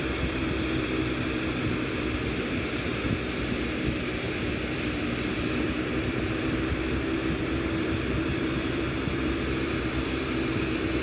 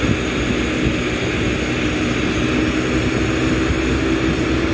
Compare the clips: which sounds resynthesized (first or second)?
first